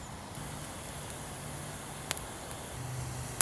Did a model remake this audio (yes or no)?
no